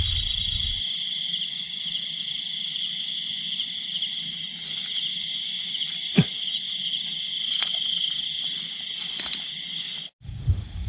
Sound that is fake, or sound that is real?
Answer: real